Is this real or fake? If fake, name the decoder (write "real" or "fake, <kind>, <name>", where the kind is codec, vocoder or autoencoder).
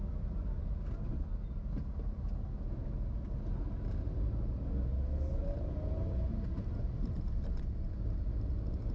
real